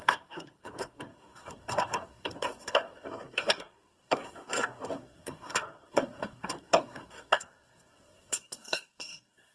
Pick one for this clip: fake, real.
fake